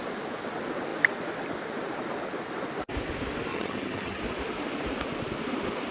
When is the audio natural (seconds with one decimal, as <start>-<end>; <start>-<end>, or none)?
0.0-3.5; 4.2-5.9